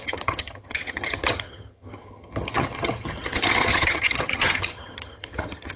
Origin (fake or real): fake